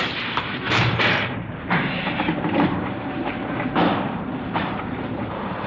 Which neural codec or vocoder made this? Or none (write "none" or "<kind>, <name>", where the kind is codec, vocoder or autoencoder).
vocoder, BigVGAN v2